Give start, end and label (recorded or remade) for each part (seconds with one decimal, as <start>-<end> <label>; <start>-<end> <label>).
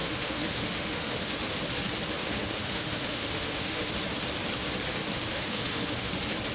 0.0-1.5 remade; 1.5-2.2 recorded; 2.2-3.9 remade; 3.9-5.0 recorded; 5.0-6.1 remade; 6.1-6.5 recorded